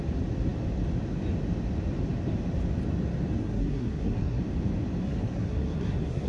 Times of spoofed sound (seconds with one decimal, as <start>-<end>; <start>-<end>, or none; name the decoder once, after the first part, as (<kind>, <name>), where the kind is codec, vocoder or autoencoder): 3.4-4.4 (codec, SNAC); 5.0-6.3